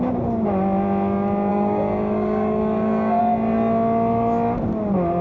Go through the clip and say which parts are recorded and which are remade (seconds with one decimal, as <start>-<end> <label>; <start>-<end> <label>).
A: 0.0-1.5 recorded; 1.5-3.2 remade; 3.2-5.2 recorded